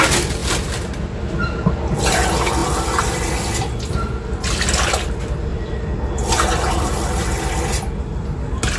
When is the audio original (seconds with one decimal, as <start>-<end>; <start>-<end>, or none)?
0.0-2.6; 3.3-5.5; 6.3-8.8